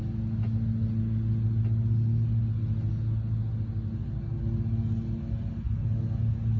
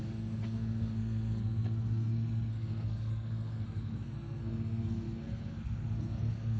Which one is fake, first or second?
second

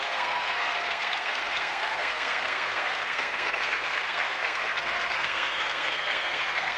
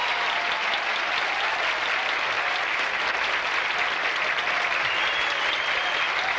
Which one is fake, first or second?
first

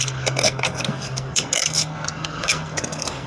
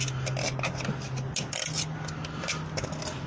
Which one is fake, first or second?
first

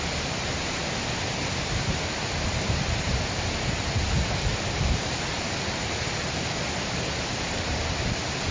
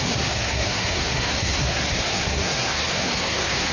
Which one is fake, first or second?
second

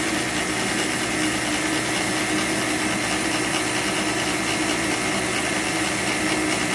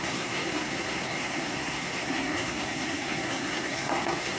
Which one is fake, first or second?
second